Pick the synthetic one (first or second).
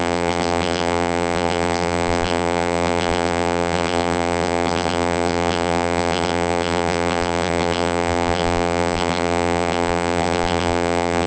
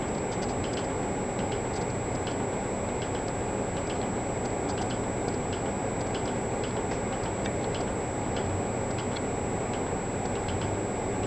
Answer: first